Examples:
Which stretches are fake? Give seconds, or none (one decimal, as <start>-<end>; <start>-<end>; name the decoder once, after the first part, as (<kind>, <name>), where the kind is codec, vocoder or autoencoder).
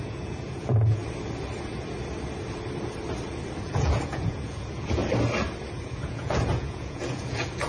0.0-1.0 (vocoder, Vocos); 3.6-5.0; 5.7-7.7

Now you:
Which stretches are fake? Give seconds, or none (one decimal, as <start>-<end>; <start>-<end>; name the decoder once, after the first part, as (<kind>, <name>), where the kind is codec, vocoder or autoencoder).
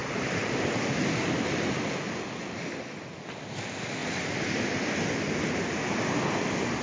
none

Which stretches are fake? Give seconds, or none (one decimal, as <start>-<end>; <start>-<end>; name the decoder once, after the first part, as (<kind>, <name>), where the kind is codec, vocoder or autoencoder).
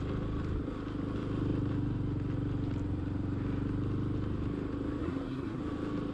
5.0-5.6 (codec, SNAC)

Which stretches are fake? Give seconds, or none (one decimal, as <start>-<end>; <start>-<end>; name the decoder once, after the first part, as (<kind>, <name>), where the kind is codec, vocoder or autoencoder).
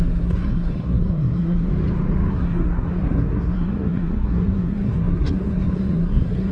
0.0-1.7 (codec, SNAC); 2.3-6.5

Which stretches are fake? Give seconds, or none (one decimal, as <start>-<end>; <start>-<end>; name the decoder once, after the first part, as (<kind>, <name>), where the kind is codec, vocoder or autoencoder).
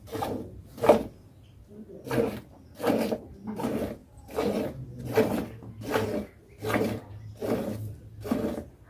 none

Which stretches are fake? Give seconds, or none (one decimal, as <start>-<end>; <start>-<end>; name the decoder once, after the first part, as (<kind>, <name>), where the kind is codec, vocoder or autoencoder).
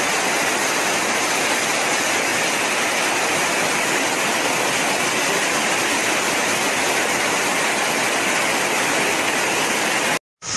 6.4-7.5 (vocoder, BigVGAN v2)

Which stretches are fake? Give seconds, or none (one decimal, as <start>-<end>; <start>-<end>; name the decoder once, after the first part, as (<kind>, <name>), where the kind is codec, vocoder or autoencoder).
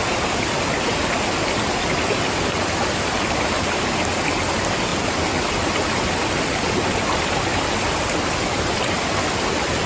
none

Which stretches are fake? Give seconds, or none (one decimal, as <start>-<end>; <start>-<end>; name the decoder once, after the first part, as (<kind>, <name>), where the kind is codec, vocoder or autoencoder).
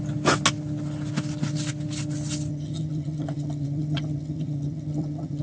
2.5-5.4 (vocoder, HiFi-GAN)